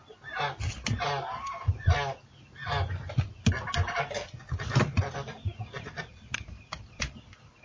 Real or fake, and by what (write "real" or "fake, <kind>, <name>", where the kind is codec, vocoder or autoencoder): real